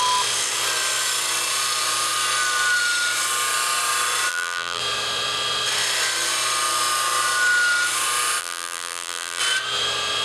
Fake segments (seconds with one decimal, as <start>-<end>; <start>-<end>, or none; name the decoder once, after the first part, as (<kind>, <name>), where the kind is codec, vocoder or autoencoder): 4.3-4.8 (vocoder, BigVGAN v2); 8.4-9.4